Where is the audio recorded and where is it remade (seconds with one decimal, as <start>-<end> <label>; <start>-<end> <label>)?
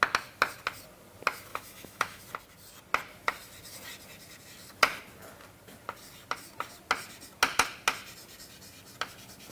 0.0-1.5 recorded; 1.5-2.2 remade; 2.2-9.5 recorded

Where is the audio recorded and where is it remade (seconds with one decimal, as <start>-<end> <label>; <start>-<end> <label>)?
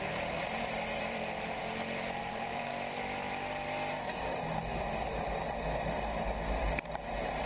0.0-1.6 remade; 1.6-2.2 recorded; 2.2-2.7 remade; 2.7-3.9 recorded; 3.9-4.6 remade; 4.6-6.5 recorded; 6.5-7.5 remade